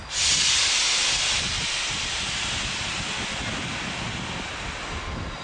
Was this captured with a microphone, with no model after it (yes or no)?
yes